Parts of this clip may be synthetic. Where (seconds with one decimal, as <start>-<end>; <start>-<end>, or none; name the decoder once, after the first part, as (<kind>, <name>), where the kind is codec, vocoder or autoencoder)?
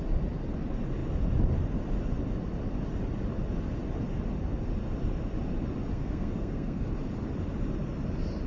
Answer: 5.9-6.8 (codec, SNAC)